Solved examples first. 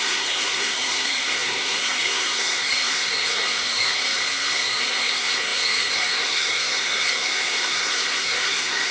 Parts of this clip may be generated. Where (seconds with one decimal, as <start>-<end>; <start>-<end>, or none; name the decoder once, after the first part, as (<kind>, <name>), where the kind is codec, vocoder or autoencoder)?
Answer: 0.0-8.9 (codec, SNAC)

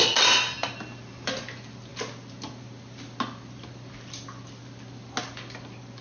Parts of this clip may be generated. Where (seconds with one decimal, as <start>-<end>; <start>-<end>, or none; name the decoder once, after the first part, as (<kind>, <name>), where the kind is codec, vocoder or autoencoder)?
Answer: none

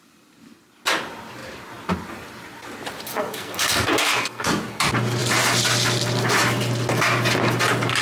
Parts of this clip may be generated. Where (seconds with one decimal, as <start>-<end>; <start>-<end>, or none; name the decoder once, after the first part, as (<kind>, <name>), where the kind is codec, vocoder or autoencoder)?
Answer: 3.1-4.8 (codec, SNAC)

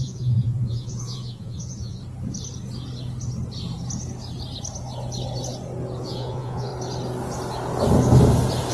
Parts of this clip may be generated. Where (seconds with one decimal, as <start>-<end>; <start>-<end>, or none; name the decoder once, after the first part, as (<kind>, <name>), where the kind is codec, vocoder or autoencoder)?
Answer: 0.0-2.0 (vocoder, Vocos); 6.0-6.7